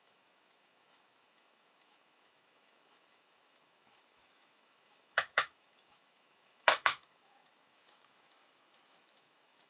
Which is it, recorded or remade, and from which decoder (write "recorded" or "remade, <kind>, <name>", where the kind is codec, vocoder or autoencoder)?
remade, autoencoder, DAC-VAE